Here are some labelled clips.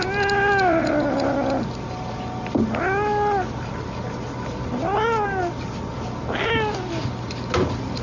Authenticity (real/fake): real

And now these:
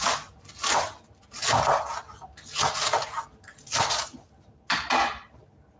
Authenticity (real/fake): real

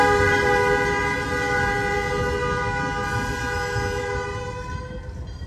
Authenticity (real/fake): real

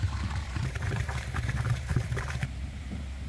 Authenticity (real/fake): fake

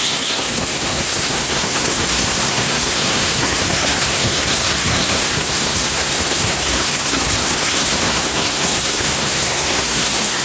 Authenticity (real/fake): fake